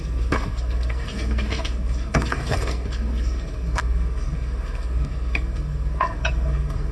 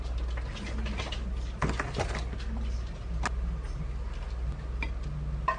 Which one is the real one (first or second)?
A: second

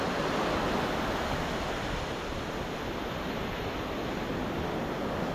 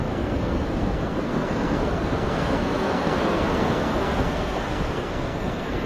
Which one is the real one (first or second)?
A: first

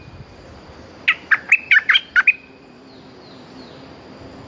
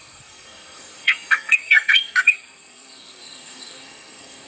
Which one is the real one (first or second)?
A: first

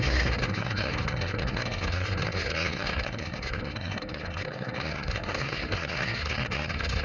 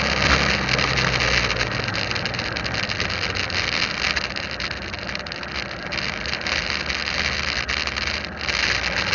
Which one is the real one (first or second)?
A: second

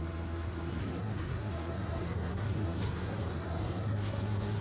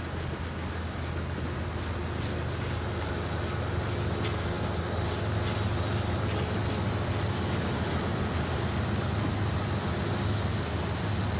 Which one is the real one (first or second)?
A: second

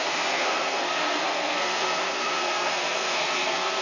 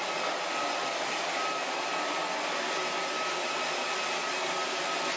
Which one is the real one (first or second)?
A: second